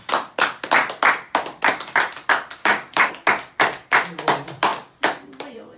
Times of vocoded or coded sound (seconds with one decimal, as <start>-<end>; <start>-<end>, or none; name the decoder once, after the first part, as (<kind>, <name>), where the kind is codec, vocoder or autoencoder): 2.6-3.1 (codec, DAC)